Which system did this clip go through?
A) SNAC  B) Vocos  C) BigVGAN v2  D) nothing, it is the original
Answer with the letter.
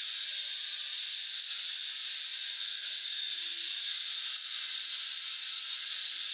D